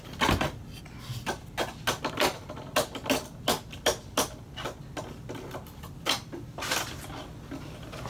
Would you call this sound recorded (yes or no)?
yes